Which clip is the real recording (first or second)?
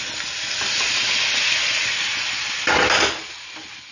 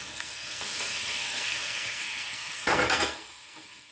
first